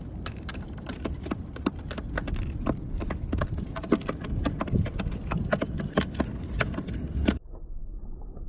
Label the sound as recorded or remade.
recorded